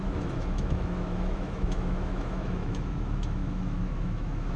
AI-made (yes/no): yes